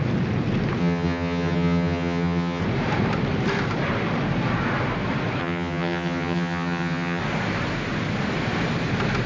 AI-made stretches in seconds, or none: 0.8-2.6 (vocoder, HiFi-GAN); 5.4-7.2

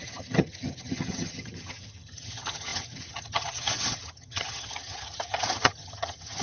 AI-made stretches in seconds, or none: 0.0-6.4 (vocoder, HiFi-GAN)

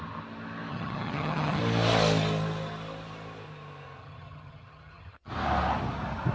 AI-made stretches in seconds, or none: 0.7-1.6 (vocoder, HiFi-GAN); 4.0-5.3